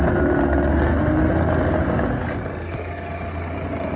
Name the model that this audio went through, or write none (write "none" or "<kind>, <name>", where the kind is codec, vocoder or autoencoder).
none